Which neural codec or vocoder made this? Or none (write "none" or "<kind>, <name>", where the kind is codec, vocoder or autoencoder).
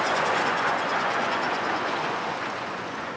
vocoder, Vocos